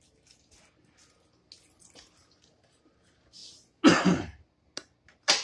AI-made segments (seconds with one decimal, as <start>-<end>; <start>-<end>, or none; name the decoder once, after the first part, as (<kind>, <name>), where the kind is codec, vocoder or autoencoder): none